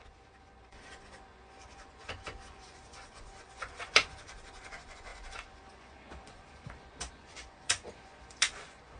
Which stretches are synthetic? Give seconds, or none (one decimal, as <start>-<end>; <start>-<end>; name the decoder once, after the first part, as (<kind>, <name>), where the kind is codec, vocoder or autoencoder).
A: 0.0-9.0 (vocoder, Vocos)